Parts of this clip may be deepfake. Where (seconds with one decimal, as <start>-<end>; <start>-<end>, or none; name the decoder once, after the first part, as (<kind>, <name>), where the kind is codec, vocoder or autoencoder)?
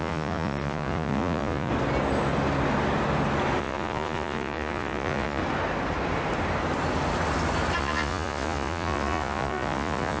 0.0-1.7 (vocoder, Vocos); 3.6-5.4; 7.8-10.2